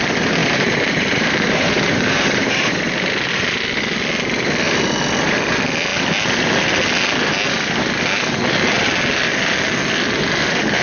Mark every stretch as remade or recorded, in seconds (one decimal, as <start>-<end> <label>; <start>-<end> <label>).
0.0-0.4 recorded; 0.4-3.3 remade; 3.3-10.8 recorded